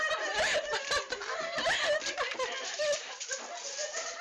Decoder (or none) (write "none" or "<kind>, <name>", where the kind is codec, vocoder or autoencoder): none